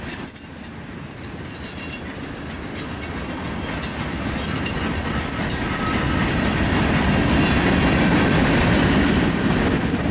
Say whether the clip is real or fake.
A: real